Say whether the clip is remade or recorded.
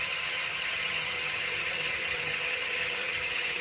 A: remade